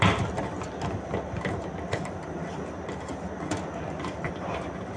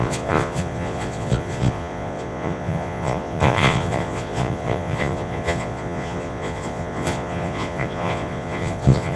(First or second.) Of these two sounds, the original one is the first